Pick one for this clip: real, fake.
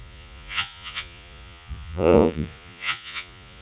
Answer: fake